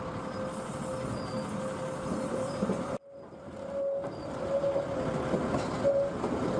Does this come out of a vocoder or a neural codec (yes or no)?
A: no